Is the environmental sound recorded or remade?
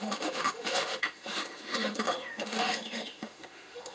remade